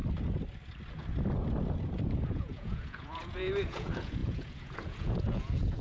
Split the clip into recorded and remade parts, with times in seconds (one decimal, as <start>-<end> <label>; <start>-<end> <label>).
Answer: 0.0-2.2 recorded; 2.2-5.8 remade